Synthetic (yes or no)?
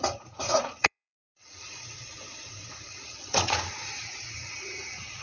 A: yes